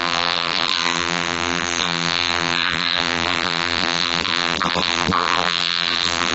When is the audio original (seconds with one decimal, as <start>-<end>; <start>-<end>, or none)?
none